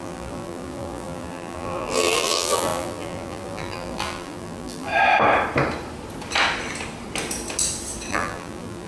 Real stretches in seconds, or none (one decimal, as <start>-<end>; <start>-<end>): 4.9-8.1